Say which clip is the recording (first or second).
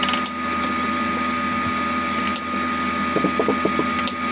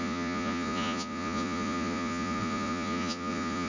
first